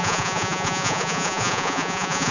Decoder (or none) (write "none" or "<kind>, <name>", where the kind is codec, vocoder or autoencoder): vocoder, Vocos